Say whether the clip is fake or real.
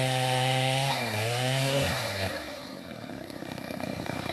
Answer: fake